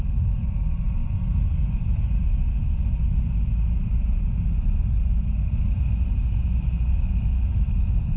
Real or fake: real